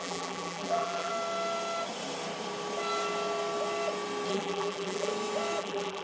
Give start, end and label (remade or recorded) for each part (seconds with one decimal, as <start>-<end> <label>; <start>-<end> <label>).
0.0-1.1 remade; 1.1-4.3 recorded; 4.3-5.1 remade; 5.1-5.6 recorded; 5.6-6.0 remade